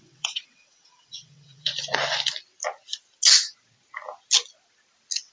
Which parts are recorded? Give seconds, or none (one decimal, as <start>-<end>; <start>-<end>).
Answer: 1.7-5.3